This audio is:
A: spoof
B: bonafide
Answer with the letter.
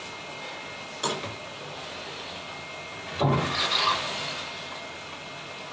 B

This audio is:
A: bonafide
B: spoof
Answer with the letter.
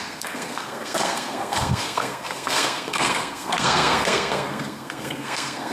B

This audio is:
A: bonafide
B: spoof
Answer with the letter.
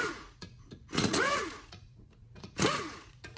B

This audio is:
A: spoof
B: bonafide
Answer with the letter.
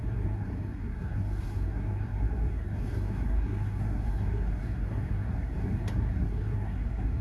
A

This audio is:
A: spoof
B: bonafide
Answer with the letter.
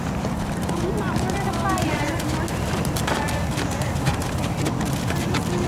B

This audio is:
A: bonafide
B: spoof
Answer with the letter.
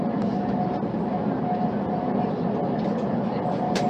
A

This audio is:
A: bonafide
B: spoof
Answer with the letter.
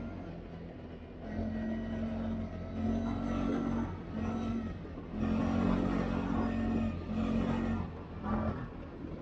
A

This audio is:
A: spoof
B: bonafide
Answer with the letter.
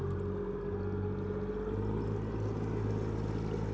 B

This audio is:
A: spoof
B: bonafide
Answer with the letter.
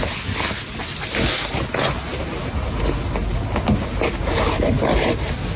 B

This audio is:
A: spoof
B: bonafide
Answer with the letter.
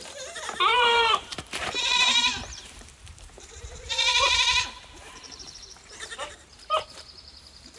A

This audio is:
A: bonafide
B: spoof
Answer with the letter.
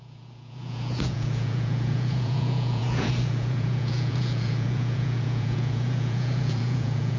B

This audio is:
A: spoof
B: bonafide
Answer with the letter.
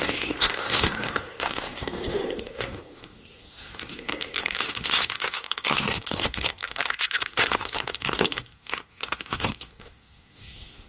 A